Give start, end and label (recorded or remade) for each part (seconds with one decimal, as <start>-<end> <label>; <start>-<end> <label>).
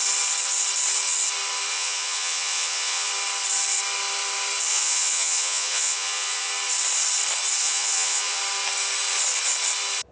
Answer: 0.0-1.7 recorded; 1.7-3.1 remade; 3.1-4.7 recorded; 4.7-6.5 remade; 6.5-7.6 recorded; 7.6-8.4 remade; 8.4-10.1 recorded